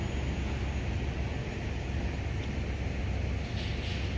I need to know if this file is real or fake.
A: real